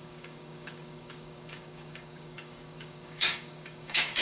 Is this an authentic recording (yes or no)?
no